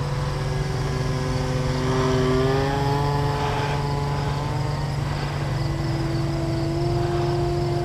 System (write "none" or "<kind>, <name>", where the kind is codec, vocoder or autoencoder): none